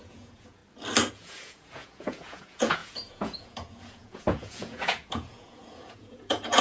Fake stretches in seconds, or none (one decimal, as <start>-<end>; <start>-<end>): 0.0-0.6; 1.1-6.6